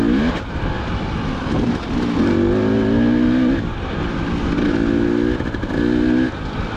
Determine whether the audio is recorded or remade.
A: recorded